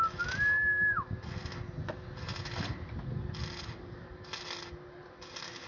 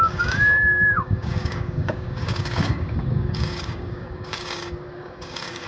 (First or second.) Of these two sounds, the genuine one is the first